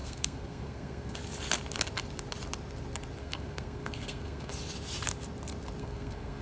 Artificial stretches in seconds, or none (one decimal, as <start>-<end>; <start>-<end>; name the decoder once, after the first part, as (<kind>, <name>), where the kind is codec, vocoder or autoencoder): 0.0-1.2 (codec, SNAC); 3.2-4.5; 5.8-6.4